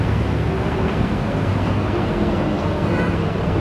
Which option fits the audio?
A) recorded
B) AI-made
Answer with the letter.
B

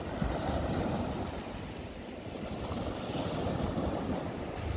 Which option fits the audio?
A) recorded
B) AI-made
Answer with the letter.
A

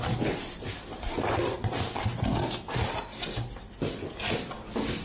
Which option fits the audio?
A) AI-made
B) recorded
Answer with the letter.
B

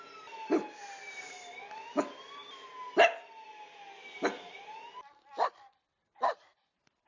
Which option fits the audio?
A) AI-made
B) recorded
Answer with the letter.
B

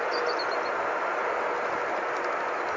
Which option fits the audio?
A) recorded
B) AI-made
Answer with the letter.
A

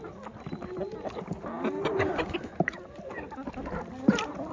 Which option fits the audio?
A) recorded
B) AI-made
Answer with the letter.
A